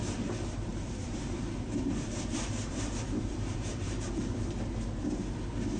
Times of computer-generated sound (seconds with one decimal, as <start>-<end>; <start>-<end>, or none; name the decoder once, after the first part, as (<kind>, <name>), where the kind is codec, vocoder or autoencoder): 0.7-4.2 (vocoder, BigVGAN v2)